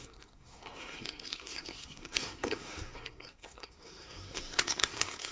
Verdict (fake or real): fake